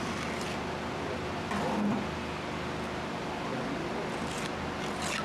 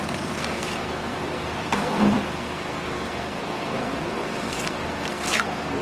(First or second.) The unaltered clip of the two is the first